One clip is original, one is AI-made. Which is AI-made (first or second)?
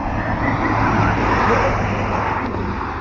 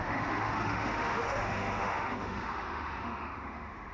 second